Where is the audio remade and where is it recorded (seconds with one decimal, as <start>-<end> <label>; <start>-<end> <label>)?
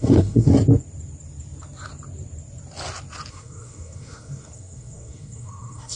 0.0-0.5 remade; 0.5-3.3 recorded; 3.3-6.0 remade